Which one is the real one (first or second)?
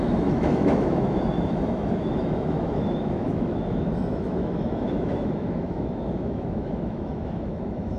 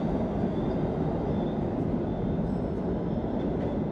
second